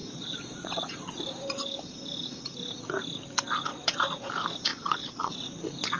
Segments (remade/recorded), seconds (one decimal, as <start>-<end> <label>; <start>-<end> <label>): 0.0-1.2 remade; 1.2-3.7 recorded; 3.7-4.3 remade; 4.3-4.7 recorded; 4.7-5.3 remade; 5.3-6.0 recorded